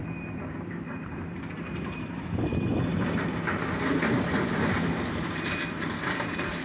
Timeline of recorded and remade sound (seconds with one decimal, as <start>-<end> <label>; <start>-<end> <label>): 0.0-2.7 remade; 2.7-3.9 recorded; 3.9-6.6 remade